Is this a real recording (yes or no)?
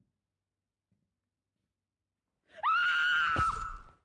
yes